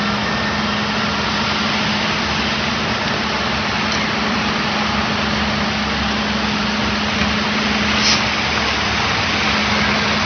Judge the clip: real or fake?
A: real